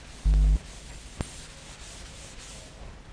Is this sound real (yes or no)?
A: yes